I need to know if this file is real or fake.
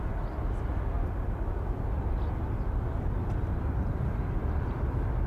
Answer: real